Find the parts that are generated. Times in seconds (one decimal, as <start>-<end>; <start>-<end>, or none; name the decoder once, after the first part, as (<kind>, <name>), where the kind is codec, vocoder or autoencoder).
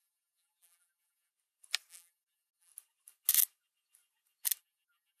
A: 0.0-1.3 (vocoder, BigVGAN v2); 1.9-2.7; 4.6-5.2